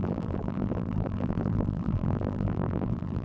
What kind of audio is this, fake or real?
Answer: fake